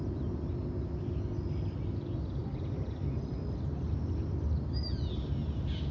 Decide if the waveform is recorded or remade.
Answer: recorded